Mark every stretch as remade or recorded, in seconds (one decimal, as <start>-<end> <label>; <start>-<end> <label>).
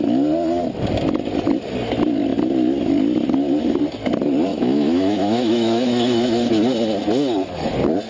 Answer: 0.0-4.5 recorded; 4.5-6.5 remade; 6.5-8.1 recorded